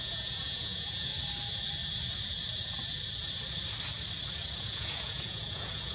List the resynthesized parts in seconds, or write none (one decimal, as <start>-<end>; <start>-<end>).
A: 0.0-1.1; 4.6-5.9